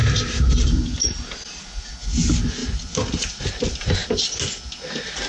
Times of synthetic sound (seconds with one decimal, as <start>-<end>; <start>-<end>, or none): 2.6-3.4